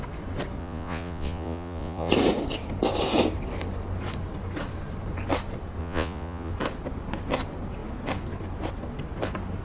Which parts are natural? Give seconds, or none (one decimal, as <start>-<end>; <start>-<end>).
0.0-0.6; 2.1-5.8; 6.5-9.6